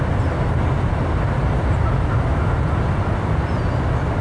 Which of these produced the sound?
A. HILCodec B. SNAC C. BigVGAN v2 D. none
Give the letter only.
D